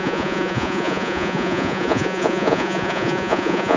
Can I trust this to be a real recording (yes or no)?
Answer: no